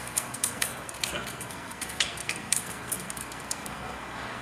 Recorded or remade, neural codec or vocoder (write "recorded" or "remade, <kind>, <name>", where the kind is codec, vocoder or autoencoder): remade, codec, SNAC